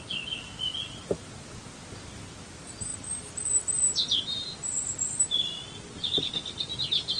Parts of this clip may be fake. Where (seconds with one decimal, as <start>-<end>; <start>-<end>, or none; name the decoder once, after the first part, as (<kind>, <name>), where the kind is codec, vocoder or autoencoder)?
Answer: none